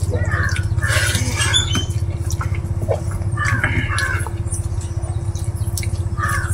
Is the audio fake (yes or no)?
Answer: no